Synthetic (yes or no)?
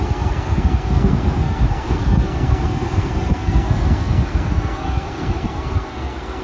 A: yes